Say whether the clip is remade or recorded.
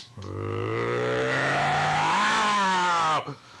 remade